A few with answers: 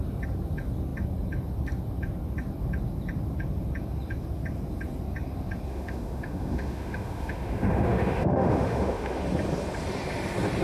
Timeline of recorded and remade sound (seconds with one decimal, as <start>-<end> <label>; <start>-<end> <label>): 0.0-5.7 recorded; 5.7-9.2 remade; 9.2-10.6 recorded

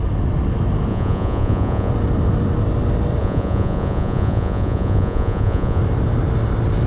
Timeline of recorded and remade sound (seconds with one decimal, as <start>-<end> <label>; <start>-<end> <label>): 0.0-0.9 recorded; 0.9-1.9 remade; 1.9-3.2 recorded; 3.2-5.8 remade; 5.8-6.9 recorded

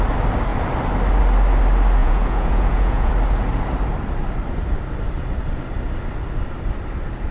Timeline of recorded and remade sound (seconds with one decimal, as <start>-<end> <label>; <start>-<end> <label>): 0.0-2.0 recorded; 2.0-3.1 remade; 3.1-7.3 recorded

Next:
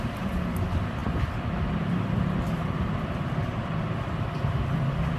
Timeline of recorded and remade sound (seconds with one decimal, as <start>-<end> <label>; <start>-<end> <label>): 0.0-5.2 recorded